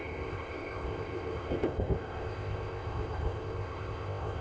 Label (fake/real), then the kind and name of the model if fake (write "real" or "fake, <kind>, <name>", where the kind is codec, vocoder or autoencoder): fake, codec, ZipCodec